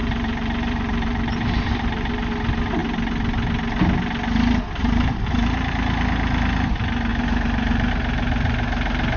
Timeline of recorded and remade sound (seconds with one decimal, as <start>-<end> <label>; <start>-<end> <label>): 0.0-2.3 remade; 2.3-4.8 recorded; 4.8-5.7 remade; 5.7-7.1 recorded; 7.1-7.9 remade; 7.9-9.2 recorded